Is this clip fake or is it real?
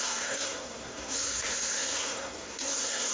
fake